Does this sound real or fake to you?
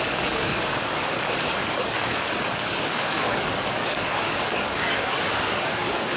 fake